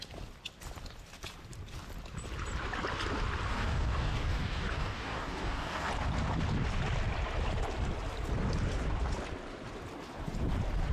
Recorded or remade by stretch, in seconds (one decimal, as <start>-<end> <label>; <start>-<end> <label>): 0.0-3.5 recorded; 3.5-5.9 remade; 5.9-10.9 recorded